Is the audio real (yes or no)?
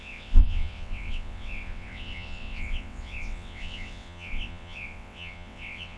no